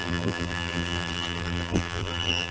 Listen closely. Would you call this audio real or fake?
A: fake